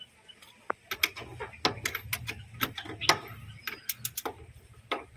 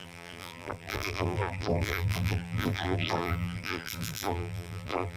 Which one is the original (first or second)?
first